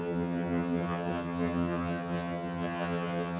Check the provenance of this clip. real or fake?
fake